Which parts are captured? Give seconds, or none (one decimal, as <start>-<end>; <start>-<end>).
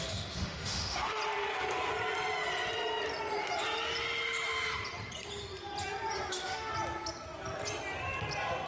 1.2-6.3; 6.7-8.7